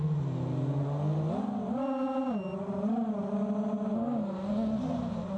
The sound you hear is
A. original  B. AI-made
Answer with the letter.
A